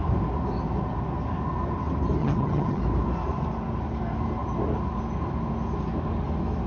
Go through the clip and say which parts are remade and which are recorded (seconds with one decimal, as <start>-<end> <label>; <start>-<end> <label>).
0.0-2.2 recorded; 2.2-2.8 remade; 2.8-6.7 recorded